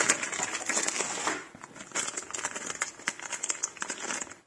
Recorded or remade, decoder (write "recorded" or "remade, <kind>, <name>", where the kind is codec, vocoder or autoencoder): recorded